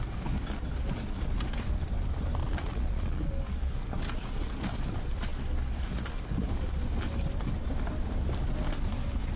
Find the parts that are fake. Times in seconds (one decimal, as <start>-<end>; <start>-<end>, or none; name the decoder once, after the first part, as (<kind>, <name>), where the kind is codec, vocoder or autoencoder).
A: 2.4-3.3 (vocoder, Vocos)